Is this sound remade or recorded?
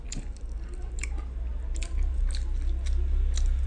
recorded